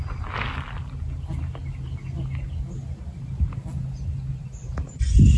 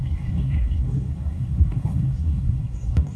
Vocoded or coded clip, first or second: second